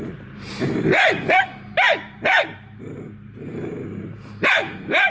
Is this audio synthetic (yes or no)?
yes